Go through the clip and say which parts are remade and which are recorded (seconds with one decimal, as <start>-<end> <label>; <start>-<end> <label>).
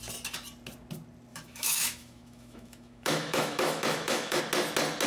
0.0-1.3 recorded; 1.3-4.4 remade; 4.4-5.1 recorded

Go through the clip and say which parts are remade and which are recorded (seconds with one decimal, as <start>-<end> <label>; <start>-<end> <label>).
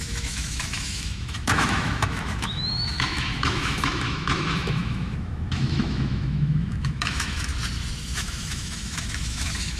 0.0-7.5 remade; 7.5-8.0 recorded; 8.0-9.8 remade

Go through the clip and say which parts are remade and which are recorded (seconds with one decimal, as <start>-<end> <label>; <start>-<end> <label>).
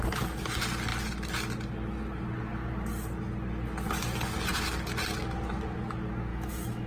0.0-6.3 recorded; 6.3-6.9 remade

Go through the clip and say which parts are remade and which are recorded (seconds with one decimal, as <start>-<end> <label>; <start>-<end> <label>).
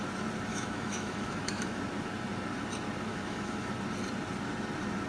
0.0-0.5 recorded; 0.5-1.8 remade; 1.8-3.1 recorded; 3.1-3.7 remade; 3.7-5.1 recorded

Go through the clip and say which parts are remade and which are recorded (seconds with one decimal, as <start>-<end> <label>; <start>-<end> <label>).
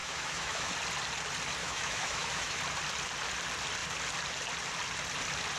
0.0-0.7 remade; 0.7-1.6 recorded; 1.6-2.6 remade; 2.6-5.6 recorded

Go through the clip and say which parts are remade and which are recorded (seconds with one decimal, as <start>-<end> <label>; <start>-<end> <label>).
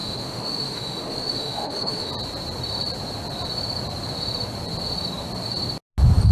0.0-2.1 remade; 2.1-6.3 recorded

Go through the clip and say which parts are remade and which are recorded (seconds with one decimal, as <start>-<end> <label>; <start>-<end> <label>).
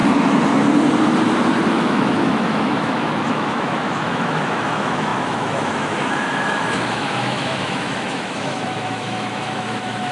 0.0-1.7 recorded; 1.7-10.1 remade